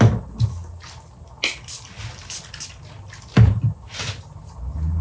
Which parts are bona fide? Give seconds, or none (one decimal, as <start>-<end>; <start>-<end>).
0.0-5.0